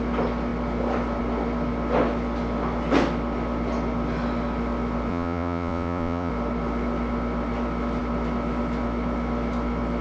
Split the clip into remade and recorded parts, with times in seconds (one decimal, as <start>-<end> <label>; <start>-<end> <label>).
0.0-5.1 recorded; 5.1-6.3 remade; 6.3-10.0 recorded